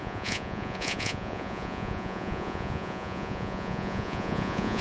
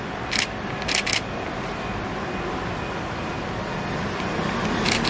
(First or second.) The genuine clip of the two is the second